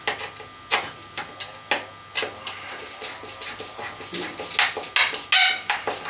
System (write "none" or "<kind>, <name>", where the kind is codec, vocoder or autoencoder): none